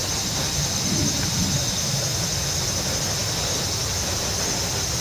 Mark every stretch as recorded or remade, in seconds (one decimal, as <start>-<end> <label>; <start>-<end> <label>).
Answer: 0.0-2.1 recorded; 2.1-2.8 remade; 2.8-5.0 recorded

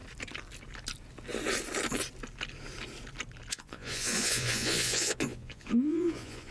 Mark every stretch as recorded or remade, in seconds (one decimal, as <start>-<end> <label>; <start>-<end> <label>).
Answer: 0.0-3.5 recorded; 3.5-6.5 remade

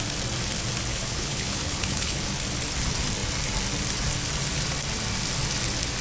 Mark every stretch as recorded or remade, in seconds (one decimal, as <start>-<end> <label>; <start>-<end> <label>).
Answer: 0.0-0.9 recorded; 0.9-2.2 remade; 2.2-6.0 recorded

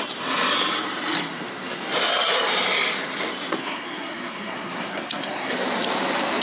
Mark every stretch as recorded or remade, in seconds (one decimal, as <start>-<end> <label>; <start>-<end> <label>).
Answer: 0.0-3.6 recorded; 3.6-5.5 remade; 5.5-6.4 recorded